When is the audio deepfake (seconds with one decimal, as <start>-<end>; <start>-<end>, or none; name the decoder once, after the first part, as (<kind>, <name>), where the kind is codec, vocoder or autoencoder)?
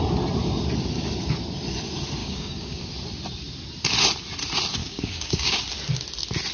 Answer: 2.2-2.8 (codec, DAC); 4.8-5.6